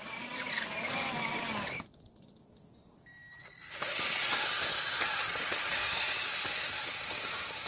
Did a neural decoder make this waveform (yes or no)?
no